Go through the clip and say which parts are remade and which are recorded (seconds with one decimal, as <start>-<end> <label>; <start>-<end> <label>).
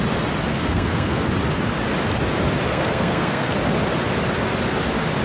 0.0-0.5 recorded; 0.5-1.3 remade; 1.3-2.7 recorded; 2.7-3.5 remade; 3.5-5.2 recorded